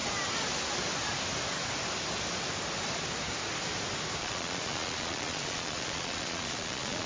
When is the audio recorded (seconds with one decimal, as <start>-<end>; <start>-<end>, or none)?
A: 0.0-4.2